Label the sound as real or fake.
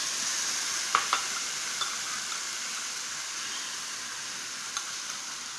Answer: real